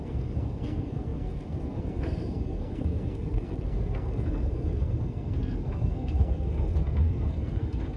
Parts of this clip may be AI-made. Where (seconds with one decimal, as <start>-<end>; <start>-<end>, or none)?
0.0-8.0